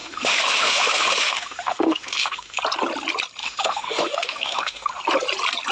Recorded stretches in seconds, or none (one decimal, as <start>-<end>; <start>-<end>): 2.6-3.4; 4.9-5.7